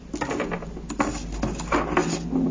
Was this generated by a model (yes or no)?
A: no